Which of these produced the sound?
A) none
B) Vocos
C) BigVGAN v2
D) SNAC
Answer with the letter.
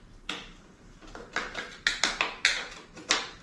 A